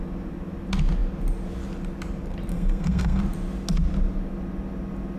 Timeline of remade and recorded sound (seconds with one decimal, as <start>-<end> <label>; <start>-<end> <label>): 0.0-2.5 recorded; 2.5-3.2 remade; 3.2-5.2 recorded